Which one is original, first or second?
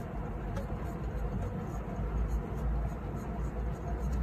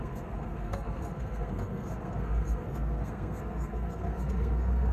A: first